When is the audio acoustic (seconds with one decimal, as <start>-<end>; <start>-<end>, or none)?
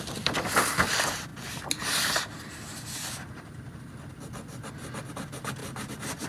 0.0-6.3